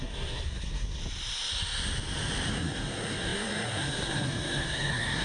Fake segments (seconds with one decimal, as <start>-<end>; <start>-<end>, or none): 0.0-1.0; 2.5-5.2